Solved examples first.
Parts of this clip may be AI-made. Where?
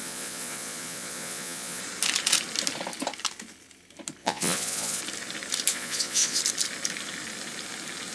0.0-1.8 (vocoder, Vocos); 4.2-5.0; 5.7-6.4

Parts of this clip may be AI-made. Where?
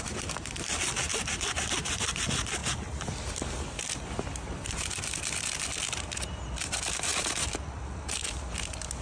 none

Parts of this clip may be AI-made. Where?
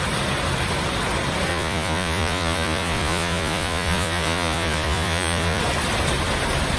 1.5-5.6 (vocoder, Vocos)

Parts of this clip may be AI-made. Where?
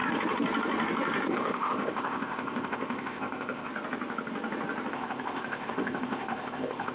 1.3-3.7 (codec, ZipCodec); 4.9-6.9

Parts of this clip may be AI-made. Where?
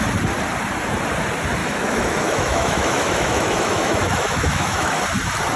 1.6-5.0 (autoencoder, DAC-VAE)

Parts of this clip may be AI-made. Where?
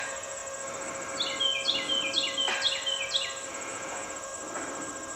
0.0-0.4 (vocoder, Vocos); 3.5-4.3